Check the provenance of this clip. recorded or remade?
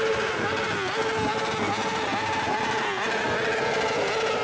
recorded